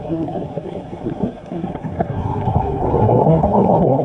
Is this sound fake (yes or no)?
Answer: yes